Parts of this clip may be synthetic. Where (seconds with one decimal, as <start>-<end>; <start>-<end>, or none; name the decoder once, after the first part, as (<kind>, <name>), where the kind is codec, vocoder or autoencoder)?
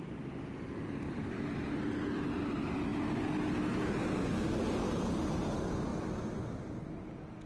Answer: none